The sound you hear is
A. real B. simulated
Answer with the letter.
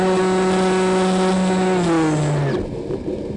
A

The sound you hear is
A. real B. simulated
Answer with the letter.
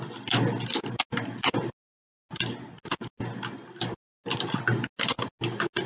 A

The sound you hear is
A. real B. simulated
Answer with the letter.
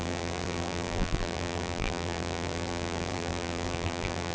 B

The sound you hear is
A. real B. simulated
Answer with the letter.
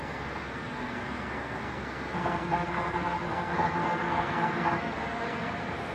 B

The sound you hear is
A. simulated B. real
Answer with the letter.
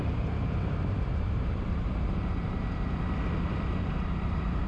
A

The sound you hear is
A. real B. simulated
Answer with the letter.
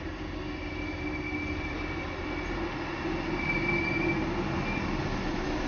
A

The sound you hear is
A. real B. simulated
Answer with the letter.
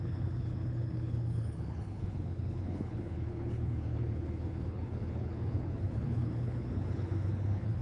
B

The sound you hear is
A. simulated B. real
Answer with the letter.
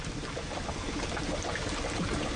B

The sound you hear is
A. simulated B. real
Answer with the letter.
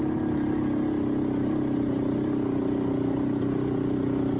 B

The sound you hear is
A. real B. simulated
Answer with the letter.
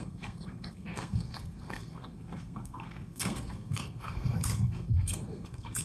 B